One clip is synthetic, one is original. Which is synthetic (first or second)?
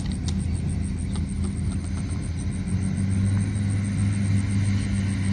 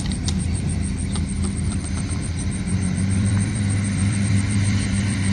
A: second